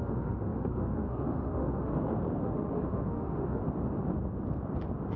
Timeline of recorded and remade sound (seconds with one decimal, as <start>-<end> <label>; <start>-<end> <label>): 0.0-1.9 remade; 1.9-2.4 recorded; 2.4-3.6 remade; 3.6-5.2 recorded